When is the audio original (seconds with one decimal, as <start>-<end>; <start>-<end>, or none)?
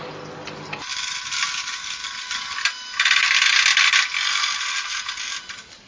0.0-5.9